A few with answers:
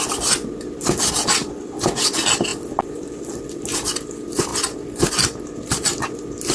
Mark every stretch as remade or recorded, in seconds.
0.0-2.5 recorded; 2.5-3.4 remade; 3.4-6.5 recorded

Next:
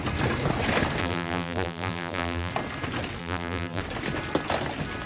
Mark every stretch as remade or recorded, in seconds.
0.0-1.0 recorded; 1.0-2.5 remade; 2.5-3.2 recorded; 3.2-3.8 remade; 3.8-5.1 recorded

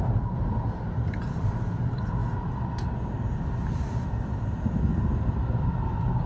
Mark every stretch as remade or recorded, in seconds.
0.0-2.2 remade; 2.2-6.3 recorded

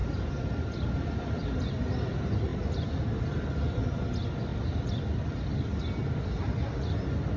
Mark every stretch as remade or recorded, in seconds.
0.0-0.7 remade; 0.7-4.5 recorded; 4.5-5.8 remade; 5.8-7.4 recorded

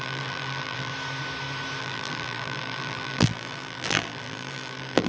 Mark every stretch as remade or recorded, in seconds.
0.0-0.9 remade; 0.9-1.8 recorded; 1.8-5.1 remade

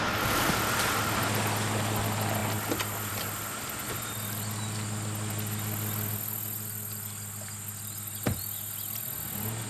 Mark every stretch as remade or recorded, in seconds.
0.0-9.7 recorded

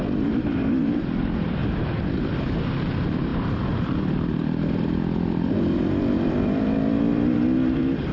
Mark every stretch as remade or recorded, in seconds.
0.0-8.1 remade

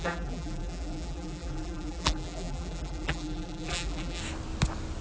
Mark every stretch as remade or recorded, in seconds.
0.0-4.2 remade; 4.2-5.0 recorded